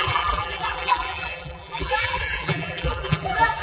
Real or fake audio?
fake